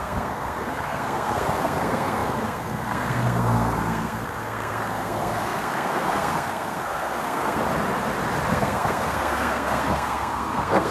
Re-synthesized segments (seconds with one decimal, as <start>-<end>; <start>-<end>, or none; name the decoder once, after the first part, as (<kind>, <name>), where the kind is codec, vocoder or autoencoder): 0.0-7.6 (codec, SNAC); 8.5-10.9